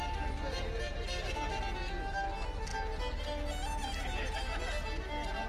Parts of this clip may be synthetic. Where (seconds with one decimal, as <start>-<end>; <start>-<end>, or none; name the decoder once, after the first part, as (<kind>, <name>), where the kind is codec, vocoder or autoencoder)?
none